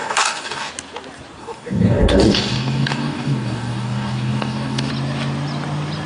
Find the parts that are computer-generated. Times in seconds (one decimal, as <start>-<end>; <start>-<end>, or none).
0.0-0.7; 1.4-4.9

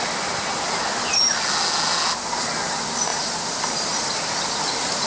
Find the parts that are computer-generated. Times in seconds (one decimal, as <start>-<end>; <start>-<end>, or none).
none

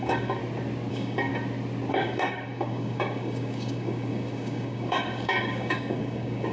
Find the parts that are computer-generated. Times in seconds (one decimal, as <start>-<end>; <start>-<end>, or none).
0.0-0.4; 0.9-1.3; 1.9-6.5

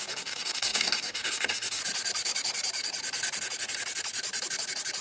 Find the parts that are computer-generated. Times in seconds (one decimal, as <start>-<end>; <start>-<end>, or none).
0.0-1.8

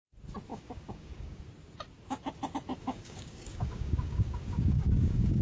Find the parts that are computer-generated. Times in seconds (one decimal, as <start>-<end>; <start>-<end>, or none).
0.5-1.4; 2.8-5.4

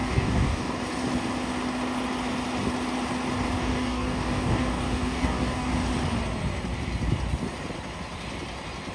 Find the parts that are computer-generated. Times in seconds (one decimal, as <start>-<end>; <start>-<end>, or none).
0.0-0.8; 3.6-5.7

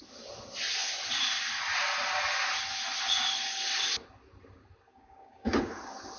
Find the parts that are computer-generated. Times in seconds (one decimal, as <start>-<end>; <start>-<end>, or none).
4.9-5.6

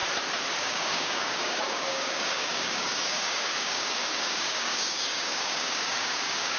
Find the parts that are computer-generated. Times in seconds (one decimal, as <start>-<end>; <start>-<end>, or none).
0.6-6.6